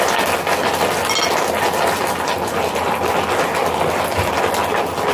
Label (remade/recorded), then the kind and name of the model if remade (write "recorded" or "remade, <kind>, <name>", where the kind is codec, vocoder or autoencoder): recorded